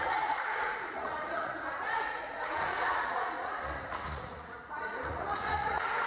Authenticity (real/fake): fake